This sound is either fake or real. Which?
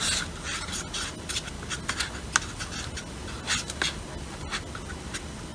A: real